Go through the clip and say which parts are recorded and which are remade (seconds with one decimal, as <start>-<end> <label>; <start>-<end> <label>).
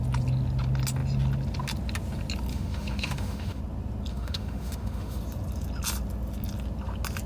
0.0-2.5 recorded; 2.5-3.6 remade; 3.6-4.1 recorded; 4.1-5.2 remade; 5.2-7.3 recorded